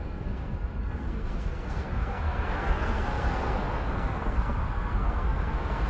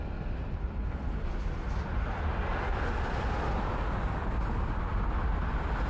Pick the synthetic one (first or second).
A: first